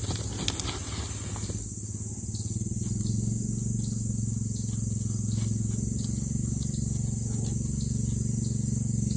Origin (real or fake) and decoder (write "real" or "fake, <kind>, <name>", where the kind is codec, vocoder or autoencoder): real